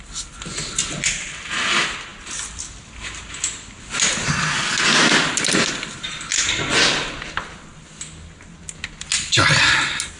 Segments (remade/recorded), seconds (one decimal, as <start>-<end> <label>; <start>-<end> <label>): 0.0-10.2 recorded